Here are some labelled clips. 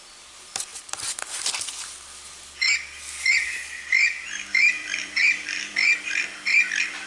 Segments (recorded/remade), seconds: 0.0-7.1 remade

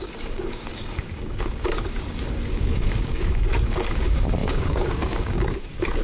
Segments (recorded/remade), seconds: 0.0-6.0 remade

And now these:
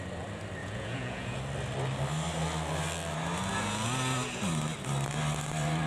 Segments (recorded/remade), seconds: 0.0-0.6 recorded; 0.6-1.4 remade; 1.4-5.9 recorded

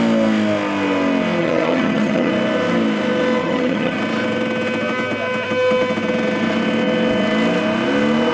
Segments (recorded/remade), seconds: 0.0-1.4 recorded; 1.4-2.3 remade; 2.3-3.4 recorded; 3.4-4.0 remade; 4.0-8.3 recorded